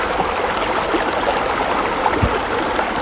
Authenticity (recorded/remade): recorded